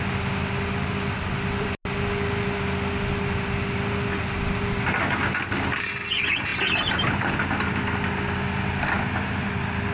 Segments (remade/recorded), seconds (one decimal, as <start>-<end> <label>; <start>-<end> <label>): 0.0-6.5 recorded; 6.5-7.3 remade; 7.3-9.9 recorded